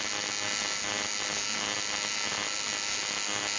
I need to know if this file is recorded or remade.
recorded